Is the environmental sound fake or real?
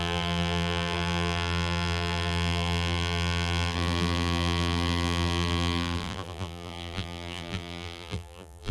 fake